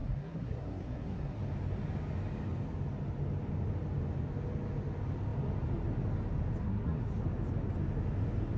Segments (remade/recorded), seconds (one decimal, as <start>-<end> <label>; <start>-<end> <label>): 0.0-1.4 remade; 1.4-6.6 recorded; 6.6-7.2 remade; 7.2-8.6 recorded